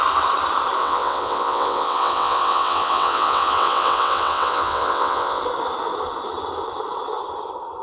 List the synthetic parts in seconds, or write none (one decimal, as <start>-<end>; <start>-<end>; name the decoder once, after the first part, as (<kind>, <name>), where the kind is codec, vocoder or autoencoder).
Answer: 0.8-5.4 (vocoder, WaveNeXt)